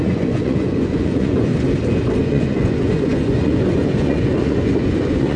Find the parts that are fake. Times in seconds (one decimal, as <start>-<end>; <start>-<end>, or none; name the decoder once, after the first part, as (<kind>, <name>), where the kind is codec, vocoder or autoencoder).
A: 0.0-1.5 (vocoder, Vocos); 2.2-5.4